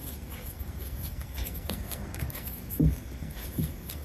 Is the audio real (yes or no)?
no